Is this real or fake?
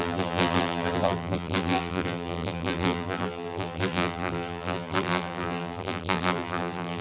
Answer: fake